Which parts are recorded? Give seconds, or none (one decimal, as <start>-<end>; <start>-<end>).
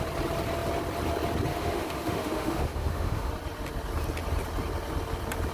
0.0-1.5; 3.3-5.5